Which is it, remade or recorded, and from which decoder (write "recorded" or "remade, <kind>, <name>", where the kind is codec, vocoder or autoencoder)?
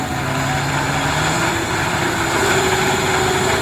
recorded